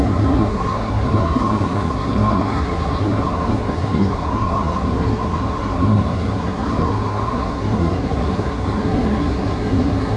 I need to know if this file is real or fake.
fake